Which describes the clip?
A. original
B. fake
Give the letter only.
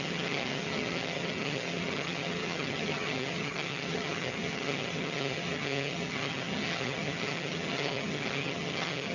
B